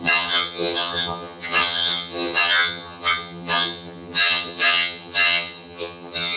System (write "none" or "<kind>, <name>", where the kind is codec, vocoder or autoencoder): vocoder, HiFi-GAN